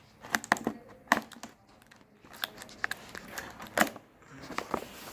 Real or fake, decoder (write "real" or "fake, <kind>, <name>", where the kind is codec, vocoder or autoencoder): real